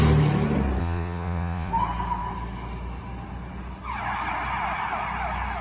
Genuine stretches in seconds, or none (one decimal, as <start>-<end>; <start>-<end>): 0.0-0.8; 1.7-5.6